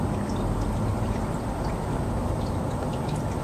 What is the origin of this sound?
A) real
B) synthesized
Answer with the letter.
A